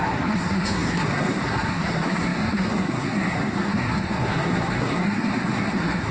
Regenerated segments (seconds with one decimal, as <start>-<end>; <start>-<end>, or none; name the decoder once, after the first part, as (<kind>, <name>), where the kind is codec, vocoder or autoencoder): 0.0-6.1 (codec, SNAC)